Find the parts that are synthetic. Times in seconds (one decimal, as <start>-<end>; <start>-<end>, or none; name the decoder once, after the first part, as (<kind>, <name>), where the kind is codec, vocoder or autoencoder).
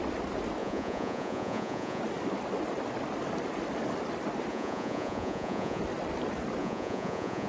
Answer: 0.6-2.0 (vocoder, Vocos); 4.5-5.8; 6.6-7.5